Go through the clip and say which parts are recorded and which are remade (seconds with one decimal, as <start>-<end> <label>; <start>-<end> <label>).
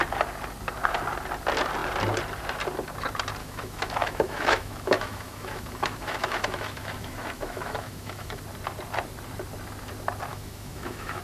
0.0-3.4 recorded; 3.4-8.4 remade; 8.4-10.3 recorded; 10.3-11.2 remade